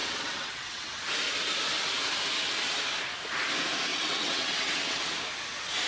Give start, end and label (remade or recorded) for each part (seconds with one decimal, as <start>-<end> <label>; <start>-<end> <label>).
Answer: 0.0-1.0 remade; 1.0-3.9 recorded; 3.9-5.0 remade; 5.0-5.9 recorded